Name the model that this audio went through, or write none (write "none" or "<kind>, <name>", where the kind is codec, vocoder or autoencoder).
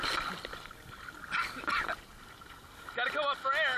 none